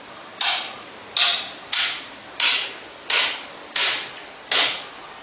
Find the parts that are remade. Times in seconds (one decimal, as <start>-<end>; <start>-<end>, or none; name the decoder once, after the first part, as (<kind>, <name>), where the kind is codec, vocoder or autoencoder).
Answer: none

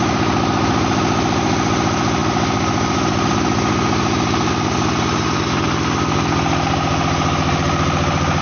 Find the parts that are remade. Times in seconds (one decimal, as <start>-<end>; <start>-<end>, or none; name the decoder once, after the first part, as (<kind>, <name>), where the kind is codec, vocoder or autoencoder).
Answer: none

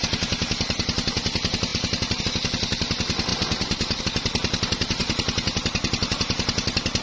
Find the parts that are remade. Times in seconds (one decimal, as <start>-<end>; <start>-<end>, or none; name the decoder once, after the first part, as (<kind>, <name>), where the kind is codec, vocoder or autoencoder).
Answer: none

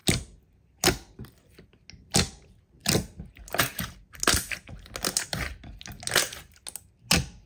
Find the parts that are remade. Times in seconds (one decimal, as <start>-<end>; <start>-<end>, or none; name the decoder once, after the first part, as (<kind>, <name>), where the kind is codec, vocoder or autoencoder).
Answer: none

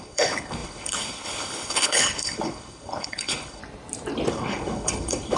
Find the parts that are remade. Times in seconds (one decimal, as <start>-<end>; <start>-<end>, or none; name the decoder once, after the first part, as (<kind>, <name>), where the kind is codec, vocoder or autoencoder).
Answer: 0.0-3.6 (codec, HILCodec); 4.3-5.4